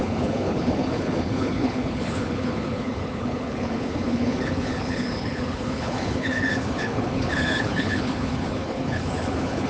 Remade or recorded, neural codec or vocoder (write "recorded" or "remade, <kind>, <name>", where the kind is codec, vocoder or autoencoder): remade, codec, HILCodec